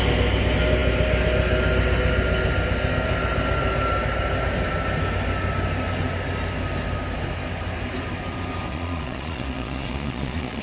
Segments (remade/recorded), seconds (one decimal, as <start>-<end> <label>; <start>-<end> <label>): 0.0-8.7 recorded; 8.7-10.6 remade